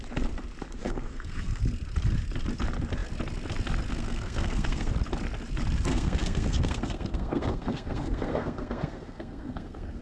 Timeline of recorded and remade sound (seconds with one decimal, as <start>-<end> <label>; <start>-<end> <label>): 0.0-0.8 recorded; 0.8-1.6 remade; 1.6-3.9 recorded; 3.9-4.9 remade; 4.9-5.9 recorded; 5.9-10.0 remade